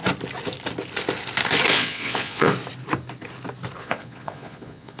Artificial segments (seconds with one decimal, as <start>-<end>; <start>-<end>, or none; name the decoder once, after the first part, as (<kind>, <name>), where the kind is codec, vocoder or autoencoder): 1.7-2.5 (vocoder, Vocos); 3.8-5.0